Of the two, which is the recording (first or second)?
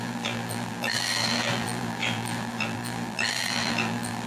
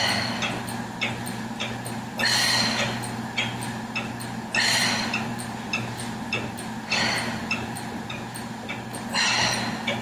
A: second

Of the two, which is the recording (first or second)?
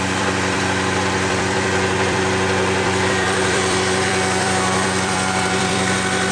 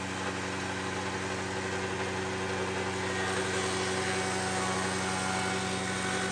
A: second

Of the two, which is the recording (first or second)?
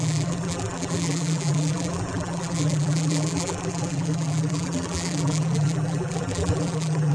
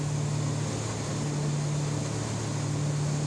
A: second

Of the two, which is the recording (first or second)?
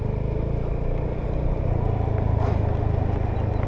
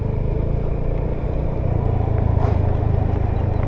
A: first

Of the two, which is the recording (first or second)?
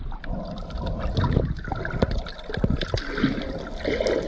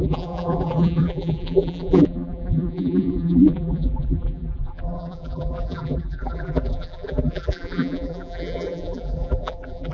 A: first